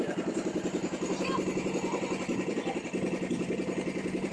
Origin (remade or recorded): remade